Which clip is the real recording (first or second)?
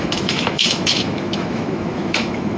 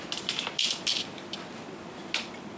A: second